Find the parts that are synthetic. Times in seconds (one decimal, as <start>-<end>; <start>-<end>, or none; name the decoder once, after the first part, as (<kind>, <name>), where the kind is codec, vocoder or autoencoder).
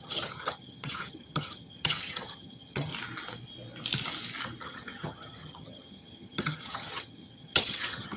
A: 0.0-2.9 (vocoder, HiFi-GAN); 4.6-8.2